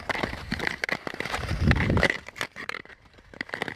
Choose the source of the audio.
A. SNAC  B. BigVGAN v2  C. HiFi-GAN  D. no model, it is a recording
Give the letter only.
B